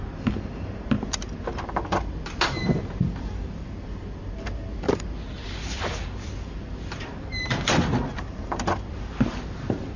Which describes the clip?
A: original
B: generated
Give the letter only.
A